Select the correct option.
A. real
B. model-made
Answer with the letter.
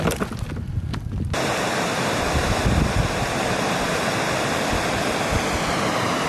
A